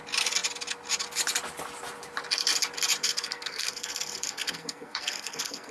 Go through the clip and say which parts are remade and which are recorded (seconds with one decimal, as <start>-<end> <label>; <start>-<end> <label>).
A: 0.0-3.0 recorded; 3.0-5.7 remade